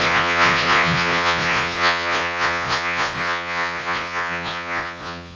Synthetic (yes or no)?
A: yes